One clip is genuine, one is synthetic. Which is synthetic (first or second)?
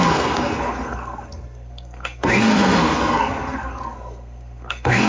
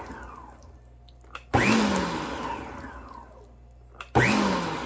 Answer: first